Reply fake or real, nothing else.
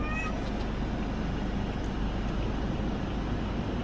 real